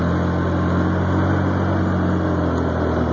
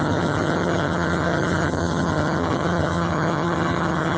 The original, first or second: first